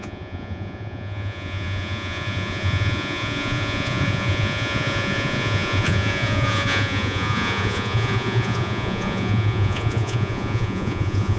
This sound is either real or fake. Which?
fake